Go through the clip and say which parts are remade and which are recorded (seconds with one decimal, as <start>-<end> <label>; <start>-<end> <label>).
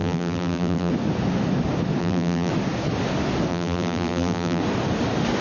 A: 0.0-0.9 remade; 0.9-2.0 recorded; 2.0-2.5 remade; 2.5-3.5 recorded; 3.5-4.6 remade; 4.6-5.4 recorded